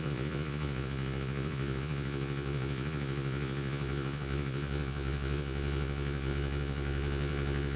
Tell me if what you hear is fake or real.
fake